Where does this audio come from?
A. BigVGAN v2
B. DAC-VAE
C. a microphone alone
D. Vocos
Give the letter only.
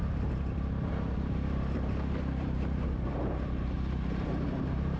A